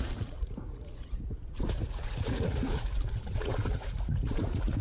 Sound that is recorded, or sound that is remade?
remade